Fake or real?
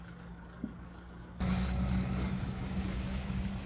fake